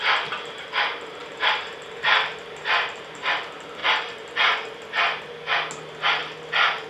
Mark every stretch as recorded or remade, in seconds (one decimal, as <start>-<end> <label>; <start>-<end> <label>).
0.0-0.9 recorded; 0.9-3.3 remade; 3.3-6.9 recorded